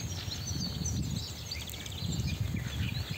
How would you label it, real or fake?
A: real